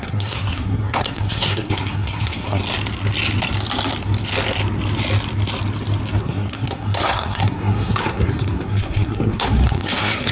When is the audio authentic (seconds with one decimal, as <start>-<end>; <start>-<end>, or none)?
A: 2.6-6.2

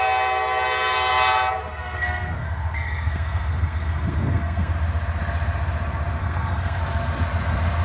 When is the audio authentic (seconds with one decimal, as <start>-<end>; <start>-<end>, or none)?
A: 0.0-1.7; 4.7-6.2; 6.8-7.8